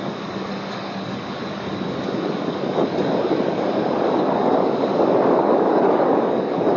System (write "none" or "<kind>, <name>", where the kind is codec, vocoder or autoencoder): codec, DAC